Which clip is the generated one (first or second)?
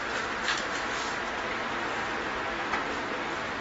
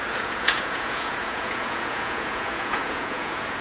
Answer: second